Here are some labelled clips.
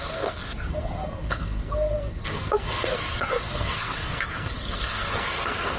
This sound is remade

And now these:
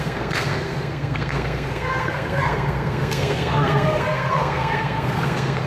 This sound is remade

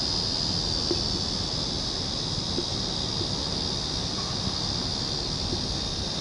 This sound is recorded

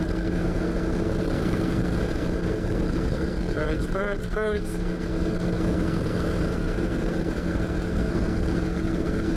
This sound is remade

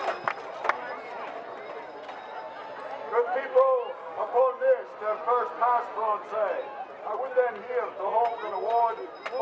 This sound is recorded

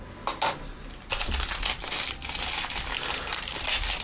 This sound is recorded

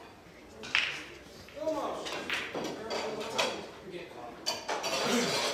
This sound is recorded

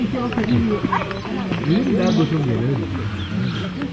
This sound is recorded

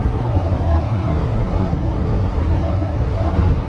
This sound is remade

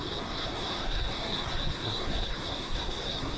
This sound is remade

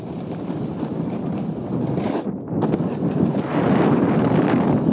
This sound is recorded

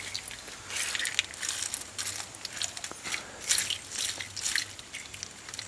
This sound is recorded